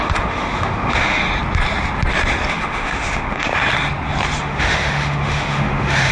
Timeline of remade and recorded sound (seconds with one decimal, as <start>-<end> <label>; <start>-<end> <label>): 0.0-1.2 remade; 1.2-2.5 recorded; 2.5-3.5 remade; 3.5-4.4 recorded; 4.4-6.1 remade